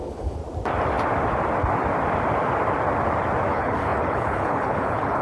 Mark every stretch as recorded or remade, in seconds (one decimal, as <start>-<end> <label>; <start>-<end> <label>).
0.0-0.4 remade; 0.4-3.5 recorded; 3.5-5.2 remade